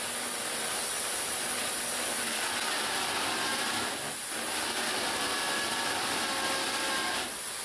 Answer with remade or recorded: recorded